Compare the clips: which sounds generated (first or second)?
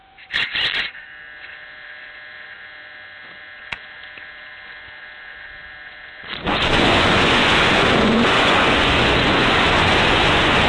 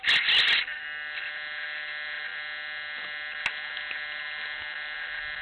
first